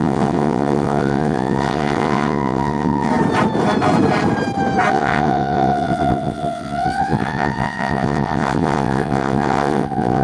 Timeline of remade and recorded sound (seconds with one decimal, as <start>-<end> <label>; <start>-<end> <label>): 0.0-3.1 remade; 3.1-4.9 recorded; 4.9-10.2 remade